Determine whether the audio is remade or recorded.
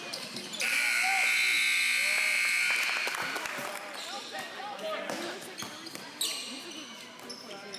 recorded